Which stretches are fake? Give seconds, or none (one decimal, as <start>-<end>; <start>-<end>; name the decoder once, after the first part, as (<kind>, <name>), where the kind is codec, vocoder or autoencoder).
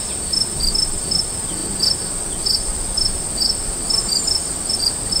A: none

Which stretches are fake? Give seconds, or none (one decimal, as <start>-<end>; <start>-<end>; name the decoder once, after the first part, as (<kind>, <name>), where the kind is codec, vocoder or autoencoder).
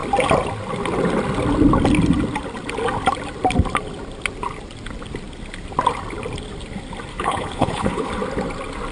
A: 7.1-8.1 (codec, HILCodec)